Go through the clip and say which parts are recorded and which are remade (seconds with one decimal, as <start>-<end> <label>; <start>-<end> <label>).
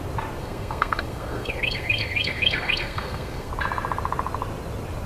0.0-0.4 recorded; 0.4-3.5 remade; 3.5-5.1 recorded